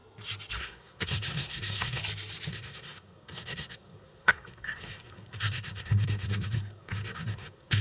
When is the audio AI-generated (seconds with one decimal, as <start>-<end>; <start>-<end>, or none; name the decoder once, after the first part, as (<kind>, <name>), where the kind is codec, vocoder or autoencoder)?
0.6-2.0 (codec, SNAC); 2.5-7.8